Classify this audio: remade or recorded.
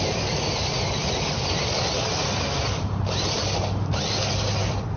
recorded